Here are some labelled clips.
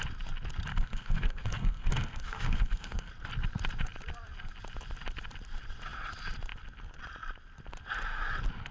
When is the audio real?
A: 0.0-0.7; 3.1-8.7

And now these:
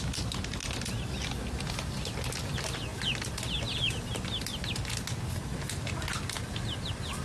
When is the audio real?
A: 0.0-7.2

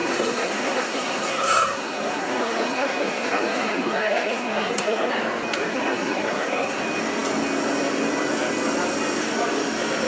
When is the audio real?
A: 5.1-5.7; 6.8-10.1

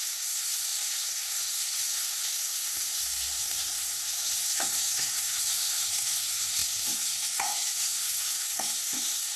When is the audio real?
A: none

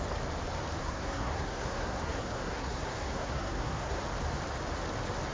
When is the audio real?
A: 0.0-0.8; 4.0-5.3

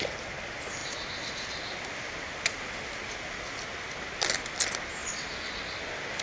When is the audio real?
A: 0.0-6.2